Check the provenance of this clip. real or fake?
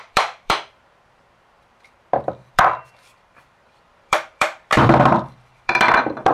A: fake